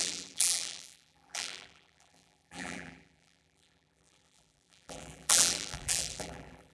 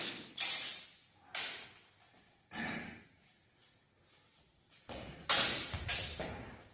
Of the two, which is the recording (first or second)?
second